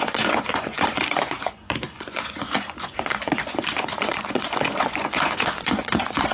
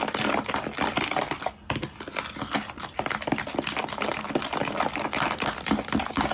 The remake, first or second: first